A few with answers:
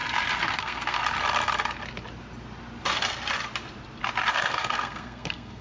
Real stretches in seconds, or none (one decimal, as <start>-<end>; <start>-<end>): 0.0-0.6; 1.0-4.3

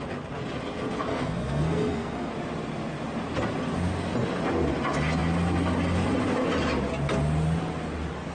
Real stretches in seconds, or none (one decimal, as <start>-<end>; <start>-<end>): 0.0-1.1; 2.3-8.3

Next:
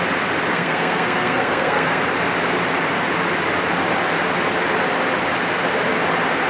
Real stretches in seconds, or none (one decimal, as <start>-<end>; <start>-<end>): 0.0-0.5; 2.0-6.5

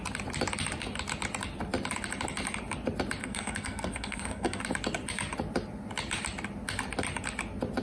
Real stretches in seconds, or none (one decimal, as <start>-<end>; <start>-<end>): 0.0-3.2; 4.6-7.8